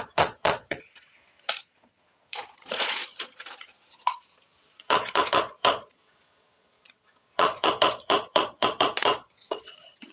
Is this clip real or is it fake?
fake